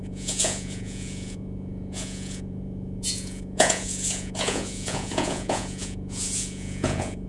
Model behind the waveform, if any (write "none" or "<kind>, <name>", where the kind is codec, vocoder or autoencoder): vocoder, Vocos